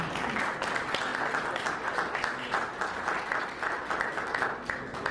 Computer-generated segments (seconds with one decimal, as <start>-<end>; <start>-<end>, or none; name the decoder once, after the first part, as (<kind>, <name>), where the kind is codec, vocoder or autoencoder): none